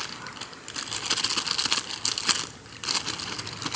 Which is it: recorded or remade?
recorded